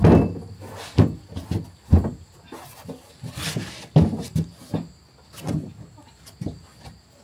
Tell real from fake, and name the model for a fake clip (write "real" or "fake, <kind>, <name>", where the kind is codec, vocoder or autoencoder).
real